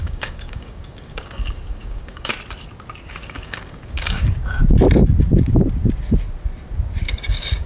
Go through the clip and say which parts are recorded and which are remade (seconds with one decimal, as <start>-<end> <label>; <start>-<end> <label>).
0.0-2.3 remade; 2.3-3.1 recorded; 3.1-4.6 remade; 4.6-7.1 recorded; 7.1-7.7 remade